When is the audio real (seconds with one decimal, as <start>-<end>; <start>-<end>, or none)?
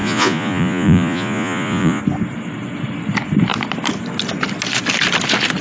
2.0-5.6